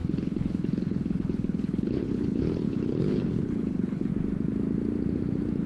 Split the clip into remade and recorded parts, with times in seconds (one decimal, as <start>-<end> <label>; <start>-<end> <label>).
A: 0.0-4.1 remade; 4.1-5.7 recorded